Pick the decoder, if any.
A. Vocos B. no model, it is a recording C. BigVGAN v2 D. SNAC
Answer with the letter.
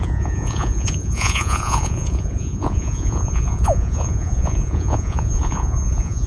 A